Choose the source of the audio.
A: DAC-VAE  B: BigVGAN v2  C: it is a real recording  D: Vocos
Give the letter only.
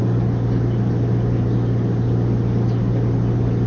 C